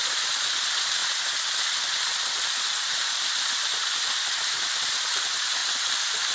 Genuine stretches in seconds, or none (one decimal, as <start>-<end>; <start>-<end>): 0.0-6.3